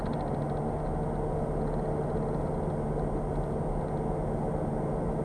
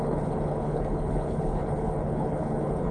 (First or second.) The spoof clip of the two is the second